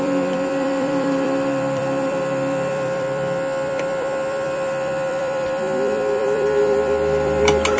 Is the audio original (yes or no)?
no